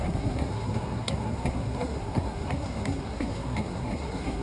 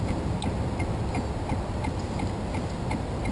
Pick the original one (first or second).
second